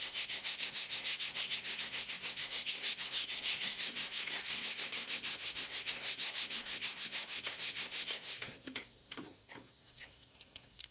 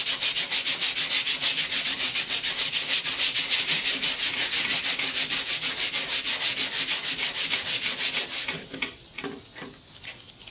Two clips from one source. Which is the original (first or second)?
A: second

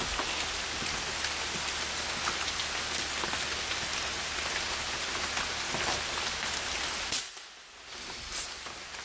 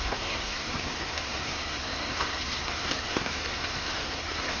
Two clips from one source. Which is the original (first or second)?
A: first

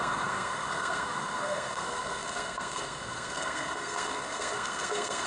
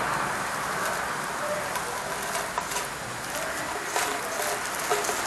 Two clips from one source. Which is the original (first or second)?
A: second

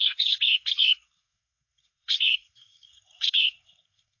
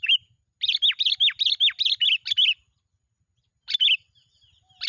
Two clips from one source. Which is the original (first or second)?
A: second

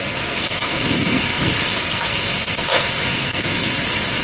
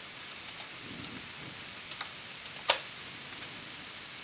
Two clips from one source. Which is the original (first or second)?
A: second